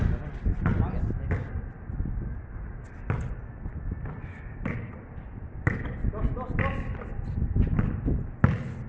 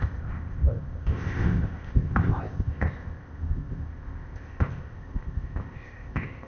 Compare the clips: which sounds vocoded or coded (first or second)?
second